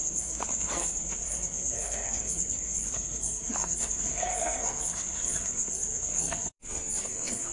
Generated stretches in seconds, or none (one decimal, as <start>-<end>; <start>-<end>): 0.0-7.5